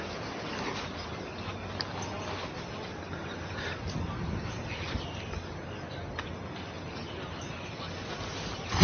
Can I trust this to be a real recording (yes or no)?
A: yes